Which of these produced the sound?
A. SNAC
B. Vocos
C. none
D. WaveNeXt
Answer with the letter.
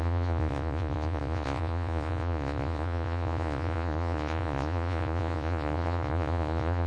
B